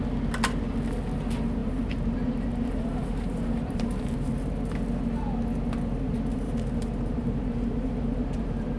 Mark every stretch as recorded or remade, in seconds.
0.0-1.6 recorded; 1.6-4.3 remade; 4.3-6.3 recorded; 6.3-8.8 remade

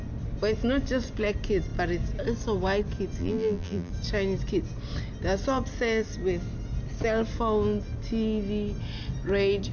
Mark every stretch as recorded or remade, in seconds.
0.0-3.2 recorded; 3.2-3.9 remade; 3.9-9.7 recorded

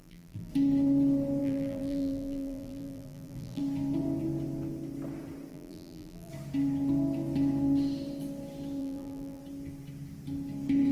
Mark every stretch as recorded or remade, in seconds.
0.0-0.5 remade; 0.5-1.4 recorded; 1.4-3.6 remade; 3.6-5.5 recorded; 5.5-6.3 remade; 6.3-8.8 recorded; 8.8-9.4 remade; 9.4-10.9 recorded

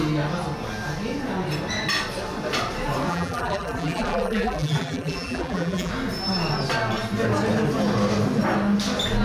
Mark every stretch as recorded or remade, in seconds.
0.0-3.1 recorded; 3.1-5.9 remade; 5.9-9.2 recorded

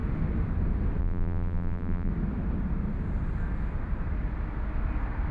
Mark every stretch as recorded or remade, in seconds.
0.0-1.0 recorded; 1.0-2.1 remade; 2.1-5.3 recorded